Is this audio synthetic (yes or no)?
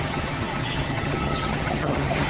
yes